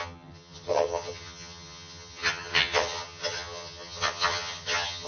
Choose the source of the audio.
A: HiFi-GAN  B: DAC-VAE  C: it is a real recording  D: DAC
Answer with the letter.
A